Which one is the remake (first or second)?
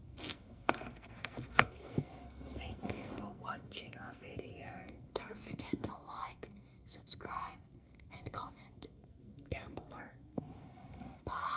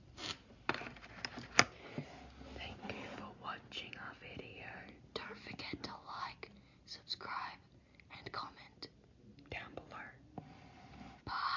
first